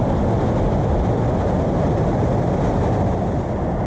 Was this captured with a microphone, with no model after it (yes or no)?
yes